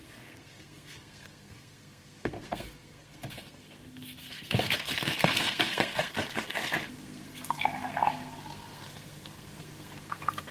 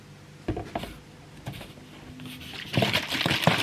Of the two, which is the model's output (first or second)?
first